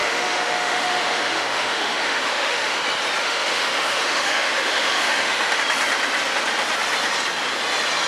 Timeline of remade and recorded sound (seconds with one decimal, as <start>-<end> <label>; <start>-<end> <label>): 0.0-2.8 remade; 2.8-3.2 recorded; 3.2-5.6 remade; 5.6-8.1 recorded